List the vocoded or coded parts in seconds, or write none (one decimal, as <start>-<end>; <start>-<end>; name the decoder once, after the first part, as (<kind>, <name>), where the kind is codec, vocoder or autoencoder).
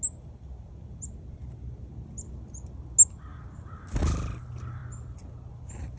none